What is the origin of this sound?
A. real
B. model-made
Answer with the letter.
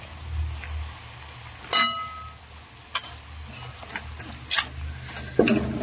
A